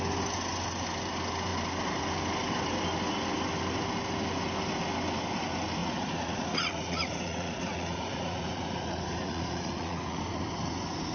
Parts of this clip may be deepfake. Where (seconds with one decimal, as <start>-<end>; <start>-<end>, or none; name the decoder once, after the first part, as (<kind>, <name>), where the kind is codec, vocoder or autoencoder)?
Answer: 5.8-10.2 (vocoder, Vocos)